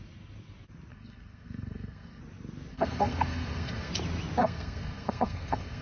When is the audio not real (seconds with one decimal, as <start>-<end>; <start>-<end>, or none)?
0.9-2.2; 2.7-3.9; 4.4-5.8